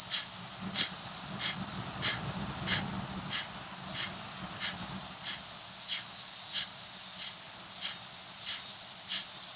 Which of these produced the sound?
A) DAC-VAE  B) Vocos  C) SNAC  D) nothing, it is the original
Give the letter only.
D